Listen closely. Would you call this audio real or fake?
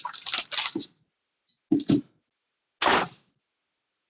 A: real